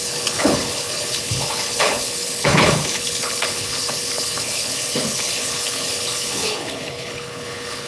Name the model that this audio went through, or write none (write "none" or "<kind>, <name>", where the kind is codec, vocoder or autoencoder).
codec, HILCodec